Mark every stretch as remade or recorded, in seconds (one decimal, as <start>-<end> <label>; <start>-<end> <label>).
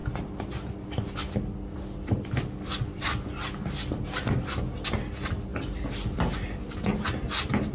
0.0-7.7 recorded